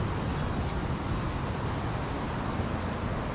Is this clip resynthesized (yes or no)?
no